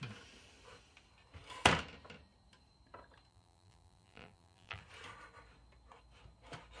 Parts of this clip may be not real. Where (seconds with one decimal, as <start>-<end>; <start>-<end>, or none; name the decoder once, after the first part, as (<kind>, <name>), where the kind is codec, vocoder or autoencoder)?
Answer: 3.3-4.8 (vocoder, BigVGAN v2)